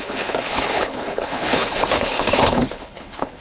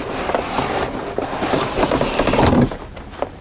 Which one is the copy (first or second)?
first